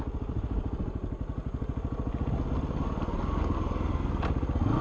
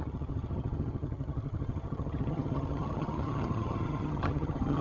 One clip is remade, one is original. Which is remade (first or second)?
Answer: second